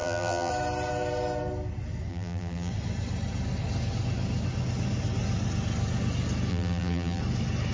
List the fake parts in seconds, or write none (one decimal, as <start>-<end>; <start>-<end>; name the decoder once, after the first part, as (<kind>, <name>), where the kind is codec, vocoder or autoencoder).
0.0-0.5 (vocoder, BigVGAN v2); 2.1-2.7; 6.5-7.2